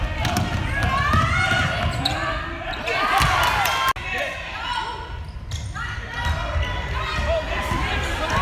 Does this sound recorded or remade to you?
recorded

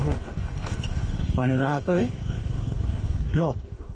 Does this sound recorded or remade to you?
remade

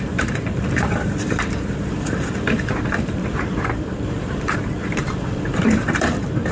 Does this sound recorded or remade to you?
remade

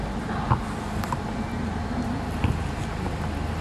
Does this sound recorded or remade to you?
recorded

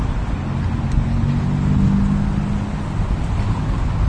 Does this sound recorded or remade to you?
recorded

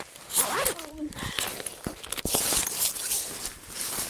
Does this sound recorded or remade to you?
recorded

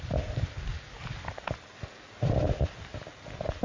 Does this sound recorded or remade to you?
recorded